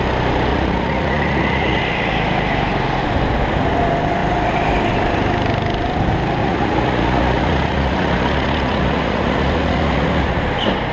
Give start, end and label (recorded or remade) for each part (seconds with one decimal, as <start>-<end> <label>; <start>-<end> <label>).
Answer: 0.0-0.5 recorded; 0.5-1.8 remade; 1.8-6.4 recorded; 6.4-10.4 remade; 10.4-10.9 recorded